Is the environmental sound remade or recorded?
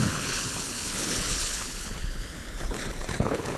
remade